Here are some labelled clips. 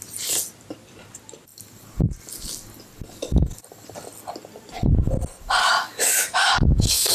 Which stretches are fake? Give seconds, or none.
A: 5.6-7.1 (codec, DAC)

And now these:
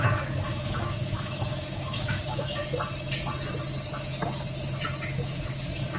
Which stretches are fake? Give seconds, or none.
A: 0.0-2.6 (codec, DAC); 5.1-6.0